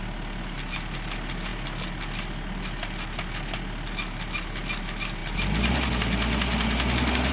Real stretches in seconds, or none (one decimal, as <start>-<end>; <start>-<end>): 0.0-7.3